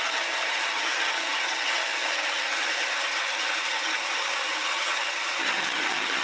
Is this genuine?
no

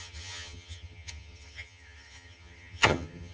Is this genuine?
no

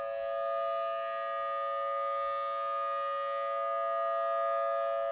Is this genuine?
yes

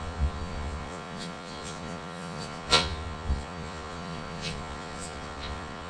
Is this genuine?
no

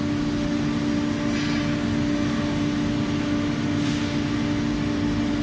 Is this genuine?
yes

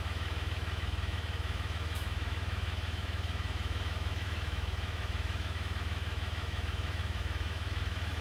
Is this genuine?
no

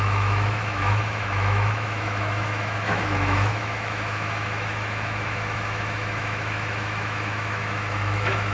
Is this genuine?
no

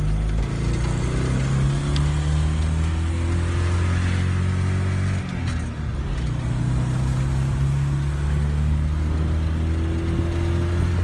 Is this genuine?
yes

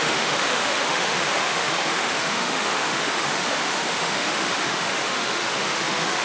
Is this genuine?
no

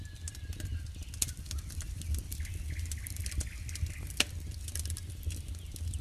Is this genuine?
yes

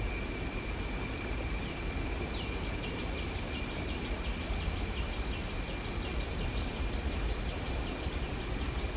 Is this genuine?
yes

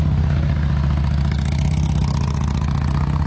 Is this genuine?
yes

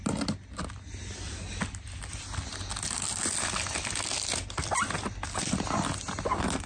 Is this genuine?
yes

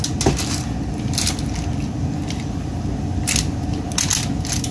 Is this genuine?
yes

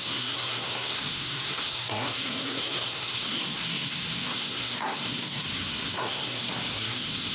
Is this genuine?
no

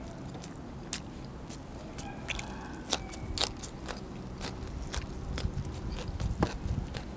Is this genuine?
yes